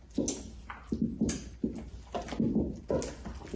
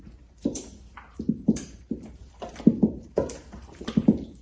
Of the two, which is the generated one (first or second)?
second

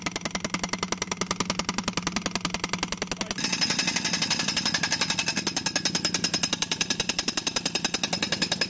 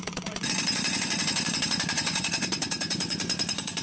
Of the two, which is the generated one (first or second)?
second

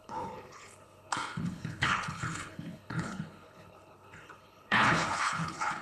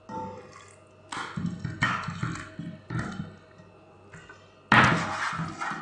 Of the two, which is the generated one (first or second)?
first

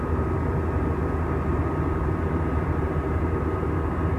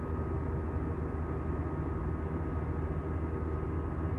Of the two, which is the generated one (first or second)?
first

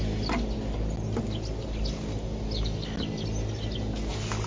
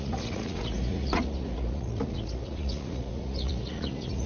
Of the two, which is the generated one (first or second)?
second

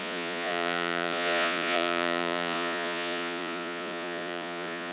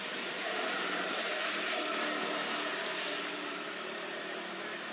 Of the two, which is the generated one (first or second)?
first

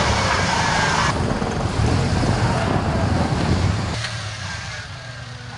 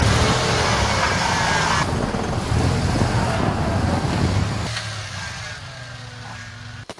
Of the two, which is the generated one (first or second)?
first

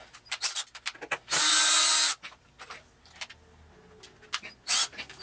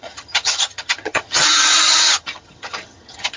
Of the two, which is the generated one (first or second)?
second